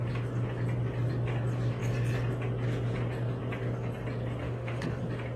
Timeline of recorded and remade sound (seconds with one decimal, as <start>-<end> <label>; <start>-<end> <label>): 0.0-4.4 recorded; 4.4-5.0 remade; 5.0-5.4 recorded